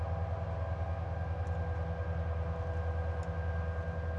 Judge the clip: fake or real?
real